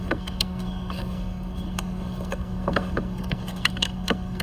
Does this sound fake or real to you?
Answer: fake